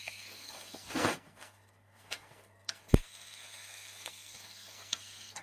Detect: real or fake fake